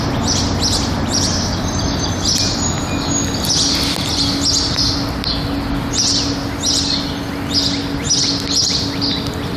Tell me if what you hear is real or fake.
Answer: real